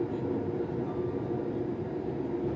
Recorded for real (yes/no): yes